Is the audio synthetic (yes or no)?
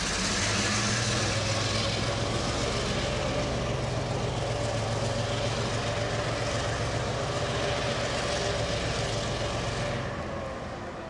no